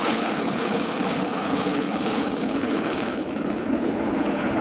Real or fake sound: fake